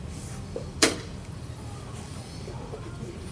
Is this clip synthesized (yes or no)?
yes